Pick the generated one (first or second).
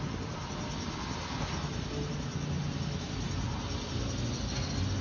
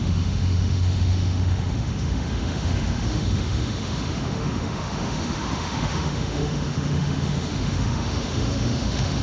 second